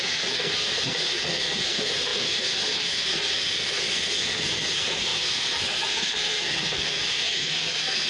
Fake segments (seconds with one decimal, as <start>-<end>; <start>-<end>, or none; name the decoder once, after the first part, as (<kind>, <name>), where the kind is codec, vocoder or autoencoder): 0.0-8.1 (codec, SNAC)